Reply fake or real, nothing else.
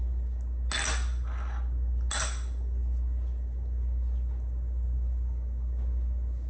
real